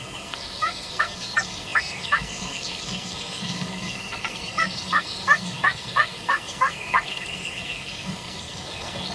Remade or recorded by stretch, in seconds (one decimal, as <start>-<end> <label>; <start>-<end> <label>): 0.0-9.1 remade